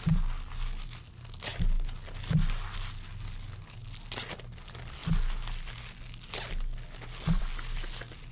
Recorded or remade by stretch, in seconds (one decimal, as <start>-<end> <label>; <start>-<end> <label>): 0.0-8.3 recorded